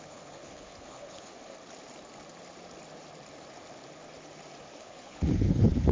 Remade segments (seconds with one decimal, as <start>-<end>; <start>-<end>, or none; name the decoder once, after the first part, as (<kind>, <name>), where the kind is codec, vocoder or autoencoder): 0.0-1.3 (codec, HILCodec); 4.8-5.9